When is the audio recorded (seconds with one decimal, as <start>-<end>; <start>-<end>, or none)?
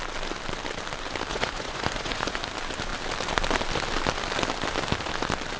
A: 0.0-1.3; 2.4-5.6